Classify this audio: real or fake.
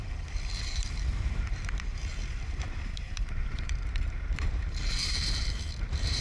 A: fake